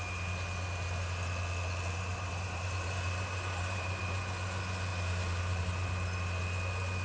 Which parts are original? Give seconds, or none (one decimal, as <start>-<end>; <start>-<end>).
0.0-2.1; 4.0-4.9; 5.6-7.0